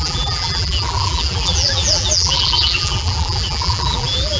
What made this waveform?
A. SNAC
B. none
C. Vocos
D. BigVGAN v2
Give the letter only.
D